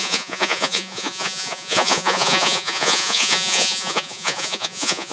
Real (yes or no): no